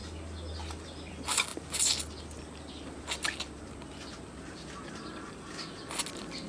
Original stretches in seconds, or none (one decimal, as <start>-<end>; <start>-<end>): 0.0-6.5